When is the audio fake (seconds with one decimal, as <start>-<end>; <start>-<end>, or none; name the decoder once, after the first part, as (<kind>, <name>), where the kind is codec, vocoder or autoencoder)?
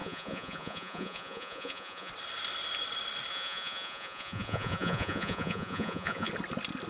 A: 0.0-2.1 (vocoder, Vocos); 3.3-6.3